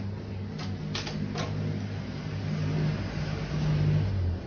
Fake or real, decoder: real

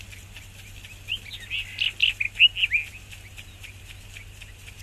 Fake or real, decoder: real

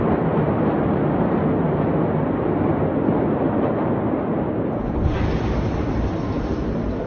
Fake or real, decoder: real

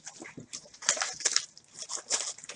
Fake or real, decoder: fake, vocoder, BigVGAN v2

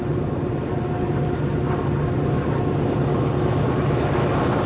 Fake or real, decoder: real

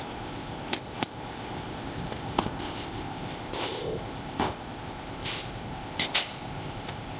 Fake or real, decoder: fake, codec, ZipCodec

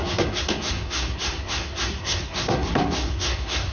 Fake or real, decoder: fake, codec, SNAC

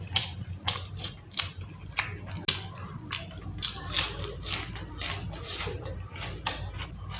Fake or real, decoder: real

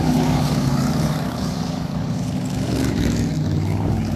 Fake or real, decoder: fake, codec, DAC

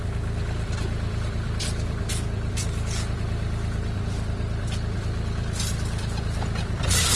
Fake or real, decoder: fake, vocoder, BigVGAN v2